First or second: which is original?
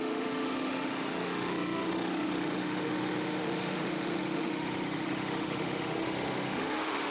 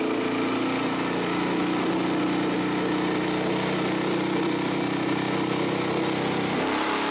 second